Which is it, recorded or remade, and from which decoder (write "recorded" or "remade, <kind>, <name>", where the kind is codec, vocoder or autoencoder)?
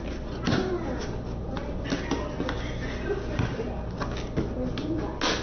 recorded